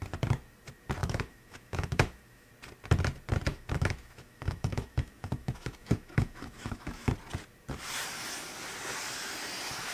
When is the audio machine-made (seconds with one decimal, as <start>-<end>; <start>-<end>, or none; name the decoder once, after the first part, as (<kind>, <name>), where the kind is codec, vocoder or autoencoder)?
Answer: 1.0-2.5 (autoencoder, DAC-VAE); 3.5-7.1